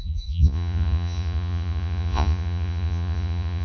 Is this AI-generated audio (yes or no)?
yes